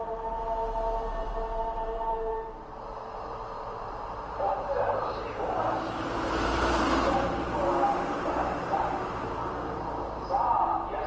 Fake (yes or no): yes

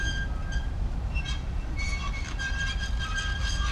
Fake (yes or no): yes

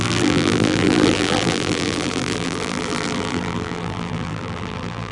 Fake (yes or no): yes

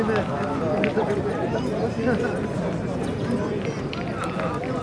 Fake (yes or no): no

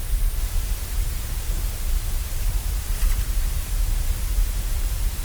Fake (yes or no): yes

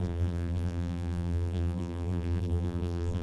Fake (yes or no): yes